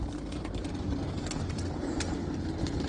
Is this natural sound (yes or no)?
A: no